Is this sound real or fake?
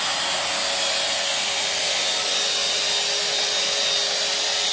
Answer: real